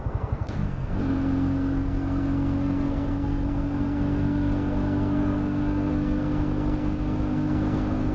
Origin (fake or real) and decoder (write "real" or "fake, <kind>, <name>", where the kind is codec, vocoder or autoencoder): fake, codec, SNAC